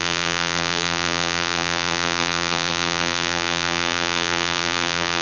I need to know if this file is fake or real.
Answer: fake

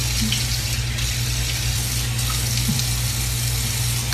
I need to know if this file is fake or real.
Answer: real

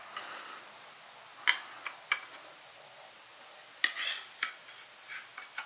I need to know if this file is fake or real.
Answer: real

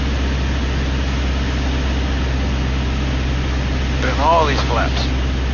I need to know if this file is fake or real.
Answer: real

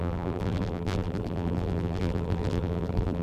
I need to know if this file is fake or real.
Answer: fake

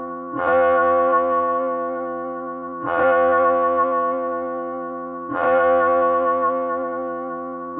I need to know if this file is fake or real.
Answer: fake